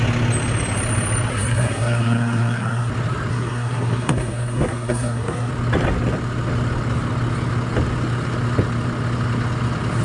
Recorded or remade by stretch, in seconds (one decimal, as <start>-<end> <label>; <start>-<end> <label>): 0.0-1.3 recorded; 1.3-2.9 remade; 2.9-3.3 recorded; 3.3-5.5 remade; 5.5-10.0 recorded